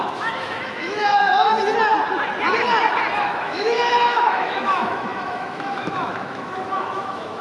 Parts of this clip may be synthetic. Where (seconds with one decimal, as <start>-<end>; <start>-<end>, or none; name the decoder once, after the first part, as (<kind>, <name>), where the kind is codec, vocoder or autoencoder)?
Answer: 0.0-1.5 (autoencoder, DAC-VAE); 3.2-7.4